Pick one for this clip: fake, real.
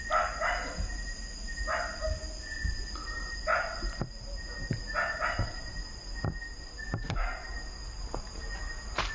real